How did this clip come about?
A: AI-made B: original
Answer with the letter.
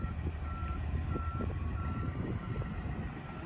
B